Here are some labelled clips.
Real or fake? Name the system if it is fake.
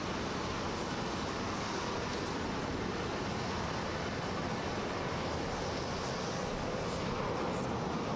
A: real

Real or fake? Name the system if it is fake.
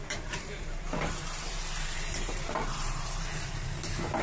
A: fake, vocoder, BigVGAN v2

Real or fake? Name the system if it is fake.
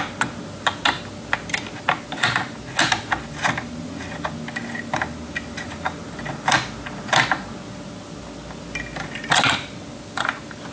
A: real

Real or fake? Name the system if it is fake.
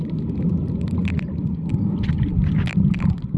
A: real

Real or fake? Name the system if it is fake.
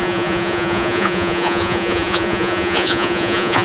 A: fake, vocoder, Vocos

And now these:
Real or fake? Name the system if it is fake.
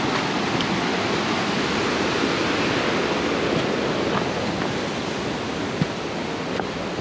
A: real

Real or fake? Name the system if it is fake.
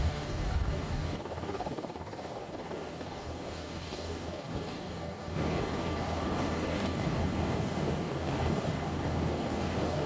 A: fake, codec, DAC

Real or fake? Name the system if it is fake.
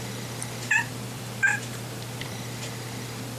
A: fake, vocoder, BigVGAN v2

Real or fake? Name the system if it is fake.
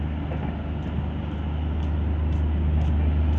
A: real